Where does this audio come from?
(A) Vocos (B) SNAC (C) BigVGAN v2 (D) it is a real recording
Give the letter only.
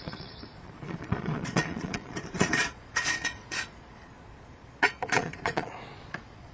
A